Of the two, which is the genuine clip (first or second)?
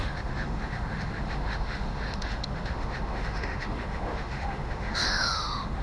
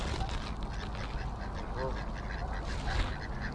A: second